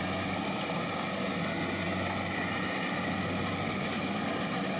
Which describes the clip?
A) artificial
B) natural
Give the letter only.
B